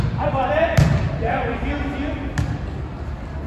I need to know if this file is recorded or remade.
recorded